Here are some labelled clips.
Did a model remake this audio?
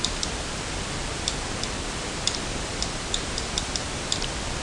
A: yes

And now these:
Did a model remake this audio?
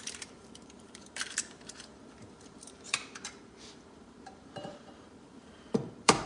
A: yes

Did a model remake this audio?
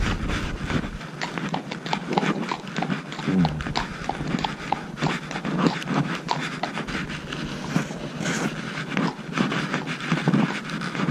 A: no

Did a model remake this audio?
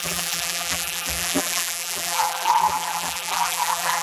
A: yes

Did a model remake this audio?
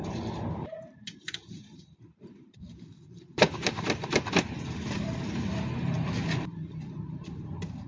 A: yes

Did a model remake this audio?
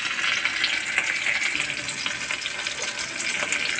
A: no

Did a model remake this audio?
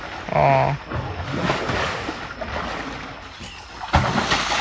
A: no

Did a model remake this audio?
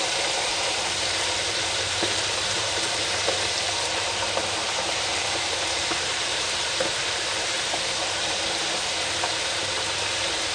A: yes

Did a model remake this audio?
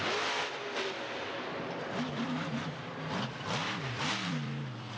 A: yes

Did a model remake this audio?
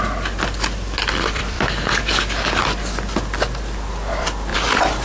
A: no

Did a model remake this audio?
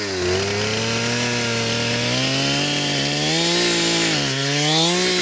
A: no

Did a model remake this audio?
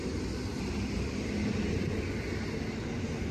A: no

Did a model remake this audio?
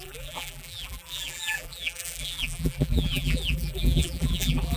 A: yes